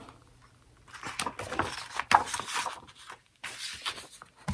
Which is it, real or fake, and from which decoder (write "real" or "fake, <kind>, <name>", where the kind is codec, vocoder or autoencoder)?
real